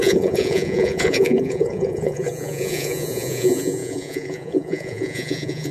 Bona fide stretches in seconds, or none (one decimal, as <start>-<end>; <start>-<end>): none

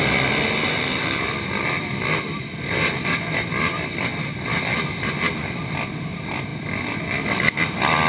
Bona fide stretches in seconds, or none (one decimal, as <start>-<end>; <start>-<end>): 0.0-8.1

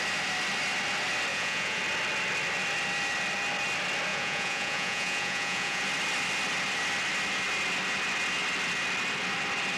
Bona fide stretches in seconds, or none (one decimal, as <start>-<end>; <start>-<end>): 0.0-1.3; 1.8-4.1; 5.8-9.8

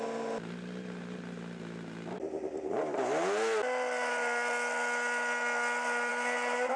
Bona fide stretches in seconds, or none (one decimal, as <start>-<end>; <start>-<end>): 0.0-6.8

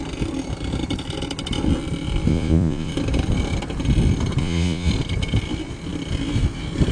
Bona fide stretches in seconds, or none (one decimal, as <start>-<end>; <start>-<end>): 0.0-2.3; 2.9-4.4; 4.9-6.9

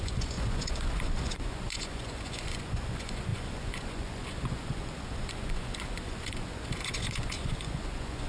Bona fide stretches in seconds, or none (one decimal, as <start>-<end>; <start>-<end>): none

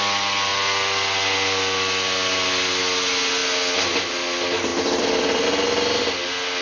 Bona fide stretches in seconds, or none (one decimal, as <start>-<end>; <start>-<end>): 0.0-6.6

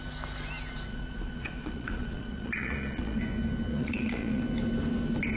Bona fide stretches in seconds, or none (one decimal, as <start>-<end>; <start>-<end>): 0.0-0.9; 3.2-3.7; 4.4-5.4